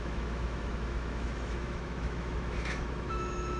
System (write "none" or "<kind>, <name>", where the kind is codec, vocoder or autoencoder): autoencoder, DAC-VAE